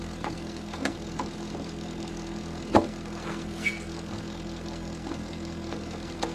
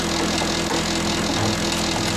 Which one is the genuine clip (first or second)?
second